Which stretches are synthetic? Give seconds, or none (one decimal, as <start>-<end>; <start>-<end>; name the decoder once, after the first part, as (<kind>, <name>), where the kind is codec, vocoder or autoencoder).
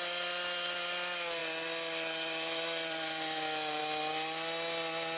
1.4-3.8 (vocoder, BigVGAN v2)